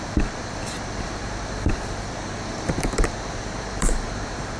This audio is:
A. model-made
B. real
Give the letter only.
A